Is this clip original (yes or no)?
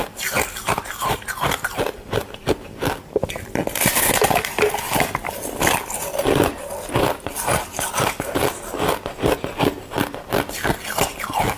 yes